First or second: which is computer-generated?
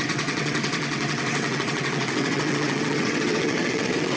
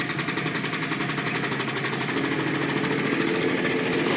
first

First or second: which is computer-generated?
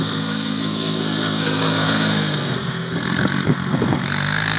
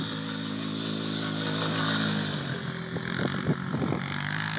first